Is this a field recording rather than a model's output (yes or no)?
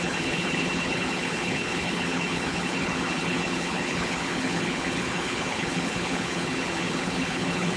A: no